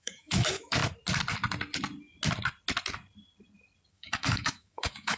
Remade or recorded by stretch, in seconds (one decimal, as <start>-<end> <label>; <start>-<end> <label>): 0.0-0.8 remade; 0.8-3.9 recorded; 3.9-5.2 remade